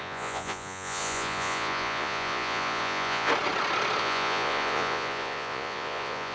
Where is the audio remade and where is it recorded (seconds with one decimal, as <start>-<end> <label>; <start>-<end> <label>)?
0.0-3.3 remade; 3.3-4.0 recorded; 4.0-6.3 remade